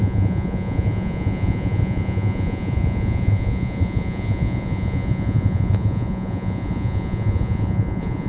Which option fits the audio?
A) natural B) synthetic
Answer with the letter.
B